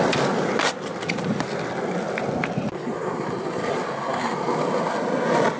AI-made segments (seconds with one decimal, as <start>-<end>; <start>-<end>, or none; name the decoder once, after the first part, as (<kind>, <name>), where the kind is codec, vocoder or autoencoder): none